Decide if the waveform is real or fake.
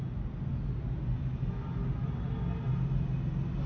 real